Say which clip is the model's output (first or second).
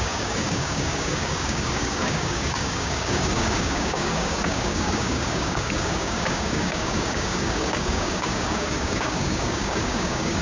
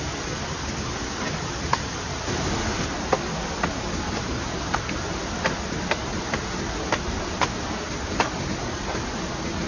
first